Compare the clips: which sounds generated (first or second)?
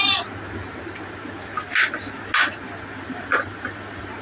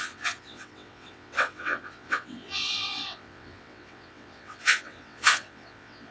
second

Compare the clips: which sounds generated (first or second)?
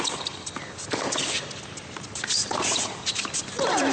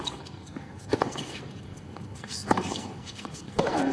second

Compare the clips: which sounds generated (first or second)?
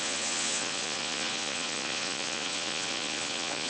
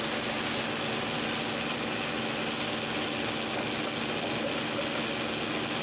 first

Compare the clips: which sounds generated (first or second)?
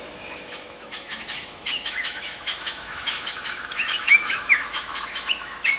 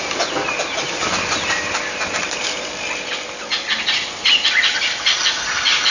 first